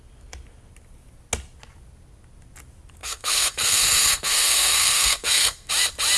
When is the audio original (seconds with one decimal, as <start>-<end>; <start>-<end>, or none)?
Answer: 0.0-3.0; 5.7-6.2